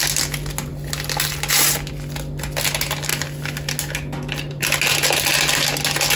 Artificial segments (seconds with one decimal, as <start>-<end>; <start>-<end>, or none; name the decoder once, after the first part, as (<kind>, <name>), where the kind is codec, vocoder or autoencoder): none